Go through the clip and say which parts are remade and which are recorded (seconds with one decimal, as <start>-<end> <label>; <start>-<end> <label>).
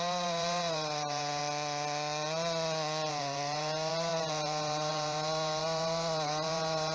0.0-1.4 remade; 1.4-3.1 recorded; 3.1-6.9 remade